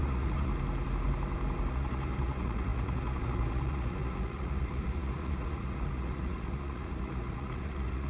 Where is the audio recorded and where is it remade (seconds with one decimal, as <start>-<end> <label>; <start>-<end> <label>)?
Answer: 0.0-0.5 remade; 0.5-1.7 recorded; 1.7-8.1 remade